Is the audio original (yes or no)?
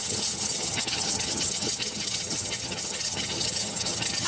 no